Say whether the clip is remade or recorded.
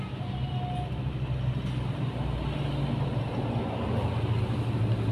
recorded